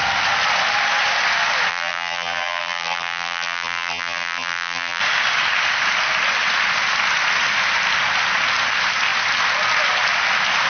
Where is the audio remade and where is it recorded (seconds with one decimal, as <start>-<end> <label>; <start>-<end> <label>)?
0.0-1.7 recorded; 1.7-5.0 remade; 5.0-10.7 recorded